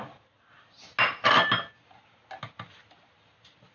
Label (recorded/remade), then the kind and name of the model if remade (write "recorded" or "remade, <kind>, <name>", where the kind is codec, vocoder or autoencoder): recorded